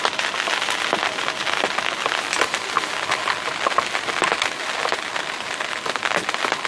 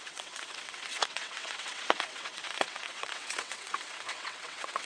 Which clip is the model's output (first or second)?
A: second